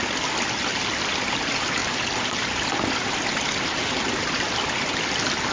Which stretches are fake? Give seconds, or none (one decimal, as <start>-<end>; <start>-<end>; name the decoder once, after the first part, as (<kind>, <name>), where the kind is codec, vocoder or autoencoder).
none